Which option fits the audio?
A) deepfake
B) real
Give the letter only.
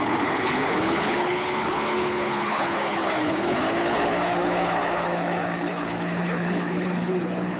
A